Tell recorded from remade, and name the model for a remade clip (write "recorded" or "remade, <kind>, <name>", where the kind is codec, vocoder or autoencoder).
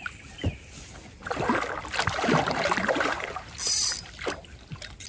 recorded